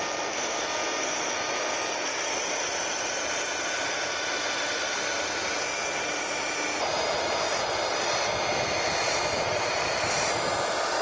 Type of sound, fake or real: real